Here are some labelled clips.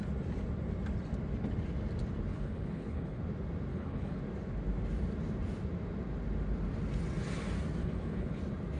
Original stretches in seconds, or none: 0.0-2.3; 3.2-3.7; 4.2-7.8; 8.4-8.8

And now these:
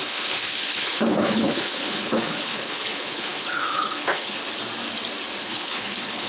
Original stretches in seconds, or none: 4.4-5.4

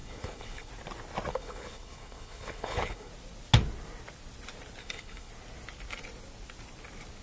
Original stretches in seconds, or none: 0.7-1.3; 3.1-4.8; 5.3-7.2

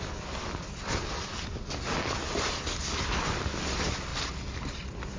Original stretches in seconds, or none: 0.0-5.2

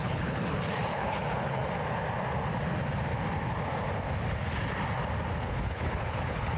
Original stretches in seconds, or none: 1.6-5.4

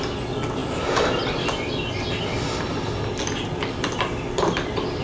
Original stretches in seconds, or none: 0.0-5.0

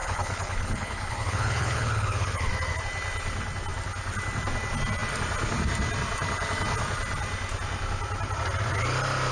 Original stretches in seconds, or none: 2.5-9.3

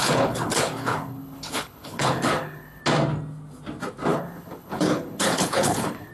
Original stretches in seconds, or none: 2.8-4.1